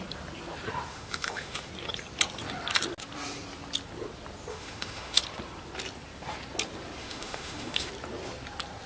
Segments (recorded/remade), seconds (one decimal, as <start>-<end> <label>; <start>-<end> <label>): 0.0-0.9 recorded; 0.9-1.7 remade; 1.7-4.5 recorded; 4.5-5.2 remade; 5.2-7.0 recorded; 7.0-7.9 remade; 7.9-8.9 recorded